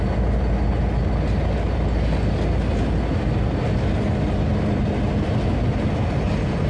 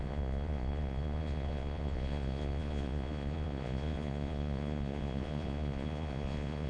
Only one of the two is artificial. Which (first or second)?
second